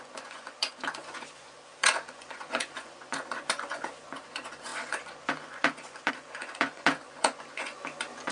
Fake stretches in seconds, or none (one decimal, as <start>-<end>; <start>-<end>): 0.0-8.3